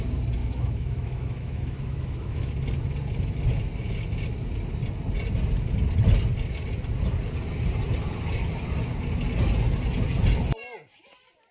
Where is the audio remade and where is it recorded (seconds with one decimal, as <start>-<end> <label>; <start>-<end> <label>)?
0.0-0.4 recorded; 0.4-2.5 remade; 2.5-11.5 recorded